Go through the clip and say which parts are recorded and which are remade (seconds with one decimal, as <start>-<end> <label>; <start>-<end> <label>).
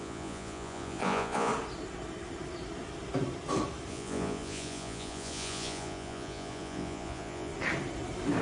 0.0-1.5 remade; 1.5-3.9 recorded; 3.9-7.5 remade; 7.5-8.4 recorded